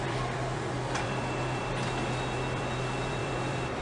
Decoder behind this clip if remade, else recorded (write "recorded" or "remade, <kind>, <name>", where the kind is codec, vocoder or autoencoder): remade, vocoder, BigVGAN v2